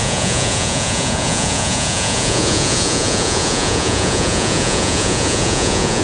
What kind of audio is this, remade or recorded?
remade